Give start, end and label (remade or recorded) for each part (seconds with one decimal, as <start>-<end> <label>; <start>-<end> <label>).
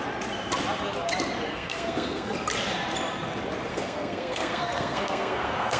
0.0-1.5 recorded; 1.5-2.3 remade; 2.3-3.7 recorded; 3.7-5.8 remade